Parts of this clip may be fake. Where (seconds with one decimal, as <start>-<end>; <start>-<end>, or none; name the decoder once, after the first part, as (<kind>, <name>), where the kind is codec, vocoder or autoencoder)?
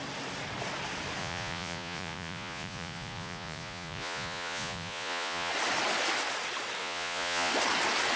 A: 1.2-5.5 (vocoder, Vocos); 6.8-7.5